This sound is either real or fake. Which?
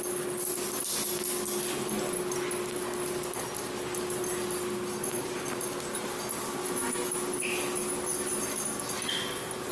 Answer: real